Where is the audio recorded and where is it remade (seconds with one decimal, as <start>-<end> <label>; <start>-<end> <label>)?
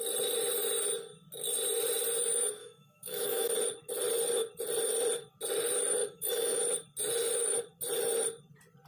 0.0-2.6 recorded; 2.6-3.5 remade; 3.5-6.0 recorded; 6.0-6.6 remade; 6.6-8.9 recorded